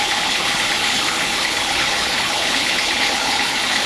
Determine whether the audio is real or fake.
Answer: fake